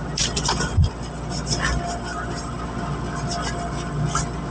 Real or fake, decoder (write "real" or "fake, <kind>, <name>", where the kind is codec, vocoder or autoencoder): real